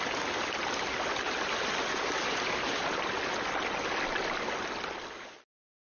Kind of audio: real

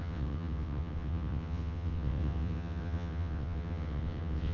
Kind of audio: fake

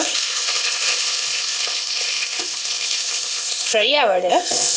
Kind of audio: fake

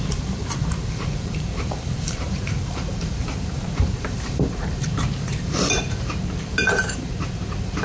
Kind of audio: fake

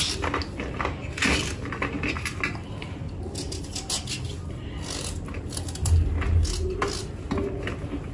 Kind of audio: real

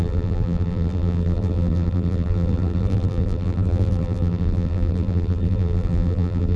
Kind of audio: fake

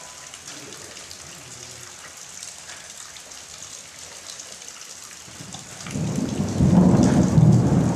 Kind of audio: real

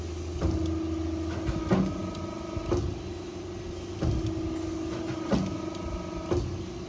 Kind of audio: real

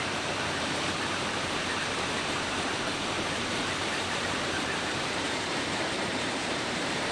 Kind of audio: fake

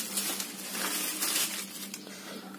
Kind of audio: real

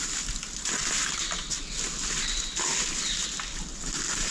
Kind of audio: real